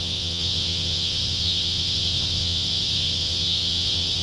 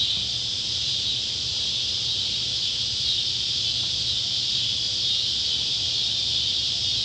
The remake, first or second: first